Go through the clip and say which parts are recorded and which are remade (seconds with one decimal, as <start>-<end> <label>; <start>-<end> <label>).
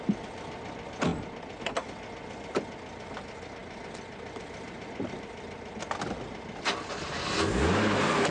0.0-8.3 recorded